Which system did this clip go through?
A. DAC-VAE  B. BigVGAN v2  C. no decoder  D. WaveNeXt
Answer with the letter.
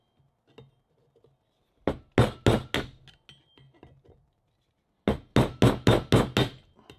C